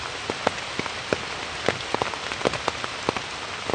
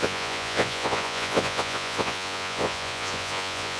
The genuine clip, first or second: first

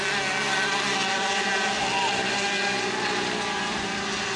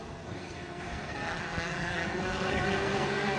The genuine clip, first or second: first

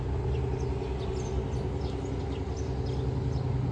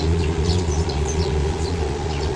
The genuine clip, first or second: first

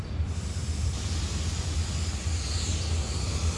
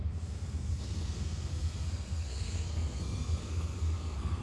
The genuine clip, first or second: first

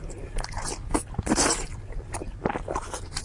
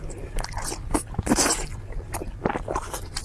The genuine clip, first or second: second